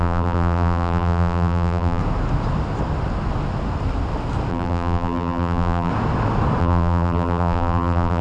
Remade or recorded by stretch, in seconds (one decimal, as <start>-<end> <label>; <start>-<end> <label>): 0.0-2.0 remade; 2.0-4.5 recorded; 4.5-5.9 remade; 5.9-6.6 recorded; 6.6-8.2 remade